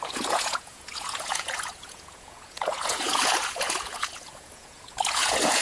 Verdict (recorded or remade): remade